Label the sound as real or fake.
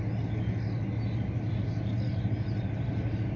real